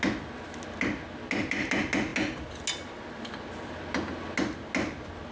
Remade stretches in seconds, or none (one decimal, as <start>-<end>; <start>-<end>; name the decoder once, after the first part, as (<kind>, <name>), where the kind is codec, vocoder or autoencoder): none